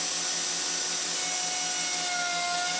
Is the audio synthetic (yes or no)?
no